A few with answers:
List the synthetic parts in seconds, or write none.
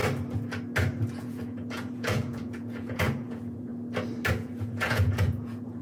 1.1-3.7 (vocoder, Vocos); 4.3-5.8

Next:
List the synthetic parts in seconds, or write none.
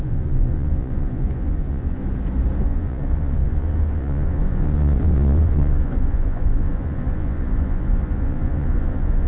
0.0-2.0 (vocoder, Vocos); 2.6-9.3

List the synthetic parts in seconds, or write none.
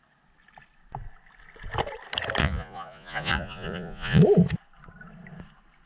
2.4-4.2 (vocoder, Vocos)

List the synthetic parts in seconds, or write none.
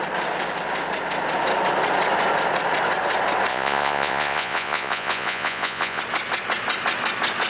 3.5-6.0 (vocoder, Vocos)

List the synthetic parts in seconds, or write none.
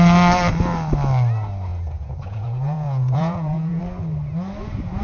1.7-3.8 (vocoder, Vocos)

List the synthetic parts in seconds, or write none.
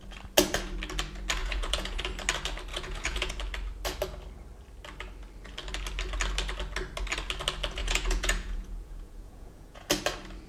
1.4-2.0 (vocoder, Vocos); 2.7-3.3; 7.8-9.9